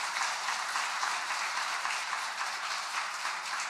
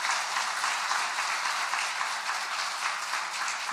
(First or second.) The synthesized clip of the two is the first